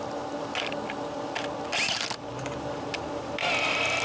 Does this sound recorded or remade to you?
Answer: recorded